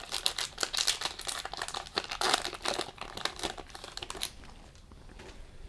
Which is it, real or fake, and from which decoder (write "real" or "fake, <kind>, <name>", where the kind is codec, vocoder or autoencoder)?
real